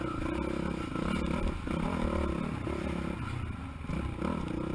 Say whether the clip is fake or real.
real